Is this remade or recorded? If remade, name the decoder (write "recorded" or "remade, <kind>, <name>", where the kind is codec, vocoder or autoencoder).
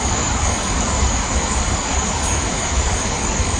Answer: remade, codec, DAC